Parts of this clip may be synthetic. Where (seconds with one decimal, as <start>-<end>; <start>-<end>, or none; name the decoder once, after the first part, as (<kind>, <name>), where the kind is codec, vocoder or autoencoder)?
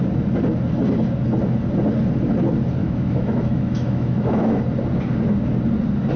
2.8-4.6 (autoencoder, DAC-VAE)